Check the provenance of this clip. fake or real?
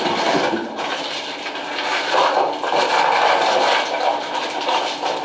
real